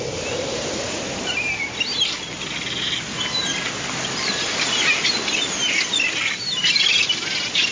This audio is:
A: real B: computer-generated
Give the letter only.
A